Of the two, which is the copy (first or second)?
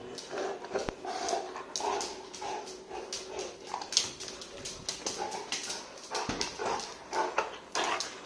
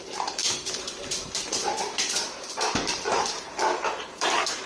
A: second